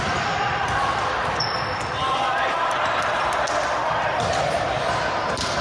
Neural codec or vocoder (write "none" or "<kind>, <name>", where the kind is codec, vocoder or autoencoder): vocoder, BigVGAN v2